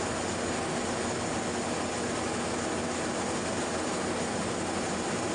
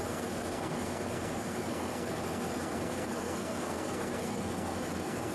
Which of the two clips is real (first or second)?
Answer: first